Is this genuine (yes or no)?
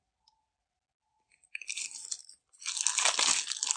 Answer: yes